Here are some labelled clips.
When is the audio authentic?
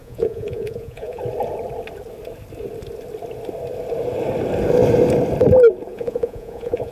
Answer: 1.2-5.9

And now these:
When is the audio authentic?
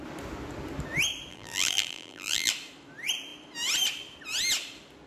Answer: 0.0-1.3; 2.5-5.1